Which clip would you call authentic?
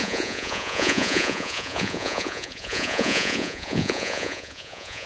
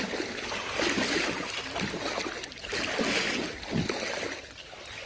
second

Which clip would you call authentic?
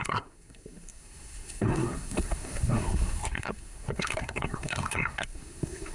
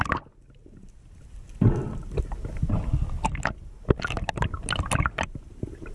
second